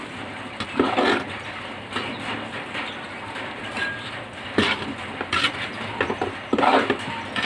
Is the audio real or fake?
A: real